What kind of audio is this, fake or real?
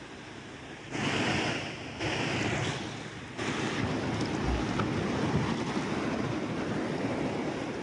real